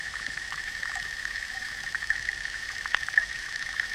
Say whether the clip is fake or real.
fake